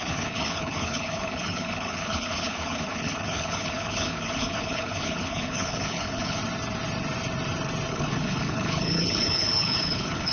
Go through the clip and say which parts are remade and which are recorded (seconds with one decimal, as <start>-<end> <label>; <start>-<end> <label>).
0.0-6.4 remade; 6.4-7.9 recorded; 7.9-10.3 remade